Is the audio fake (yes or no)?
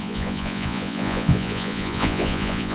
yes